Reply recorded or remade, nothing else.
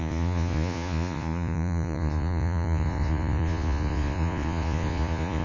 remade